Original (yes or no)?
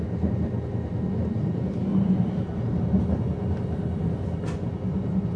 yes